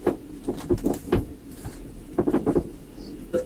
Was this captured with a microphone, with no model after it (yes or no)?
yes